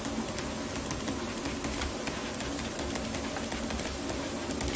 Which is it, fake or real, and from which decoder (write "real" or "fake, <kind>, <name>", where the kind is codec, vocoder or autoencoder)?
real